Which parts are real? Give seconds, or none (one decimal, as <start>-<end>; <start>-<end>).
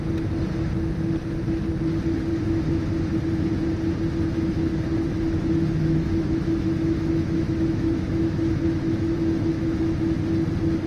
0.0-2.3; 3.2-4.7; 9.8-10.9